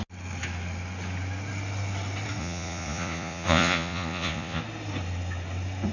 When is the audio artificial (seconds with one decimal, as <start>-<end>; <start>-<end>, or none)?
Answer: 2.4-4.6